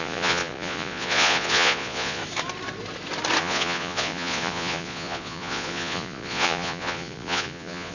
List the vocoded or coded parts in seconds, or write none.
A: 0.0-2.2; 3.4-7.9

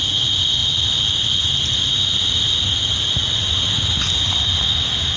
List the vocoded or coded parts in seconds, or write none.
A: none

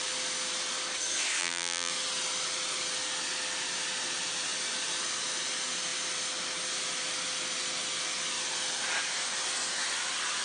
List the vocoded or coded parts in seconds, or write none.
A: 1.4-1.9

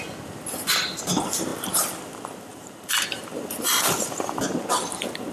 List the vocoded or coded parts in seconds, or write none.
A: 2.5-4.4

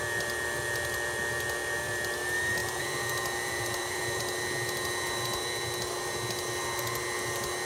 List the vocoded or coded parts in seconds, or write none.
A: 2.6-4.2